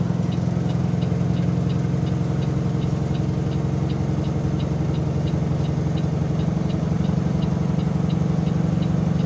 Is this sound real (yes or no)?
yes